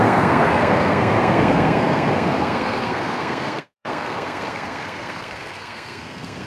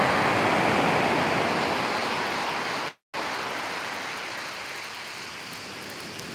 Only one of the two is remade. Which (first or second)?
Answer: first